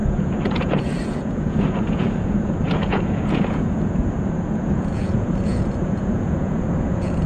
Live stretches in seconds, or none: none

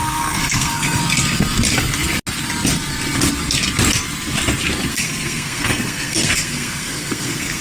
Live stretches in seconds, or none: 1.0-4.9

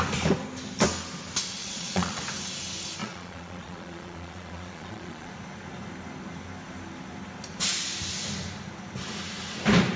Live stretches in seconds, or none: 0.0-1.6; 2.2-3.0; 5.3-10.0

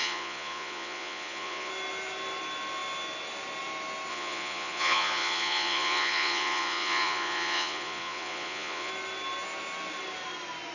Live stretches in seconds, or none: 1.7-4.1; 8.9-10.7

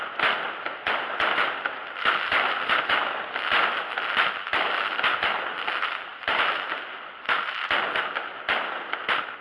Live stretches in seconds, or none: 0.0-9.4

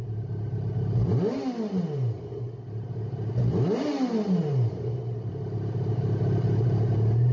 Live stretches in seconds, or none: 0.0-7.3